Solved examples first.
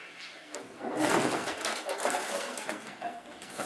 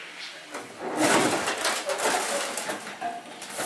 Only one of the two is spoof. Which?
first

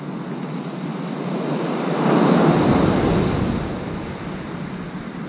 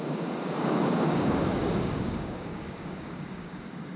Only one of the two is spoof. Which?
second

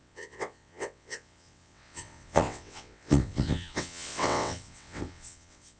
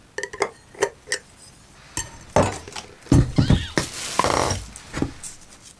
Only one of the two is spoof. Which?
first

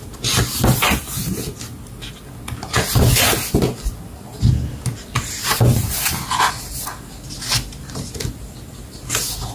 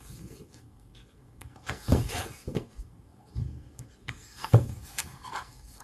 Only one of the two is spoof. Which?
second